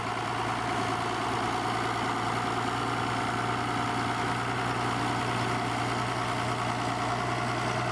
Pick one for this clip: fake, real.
real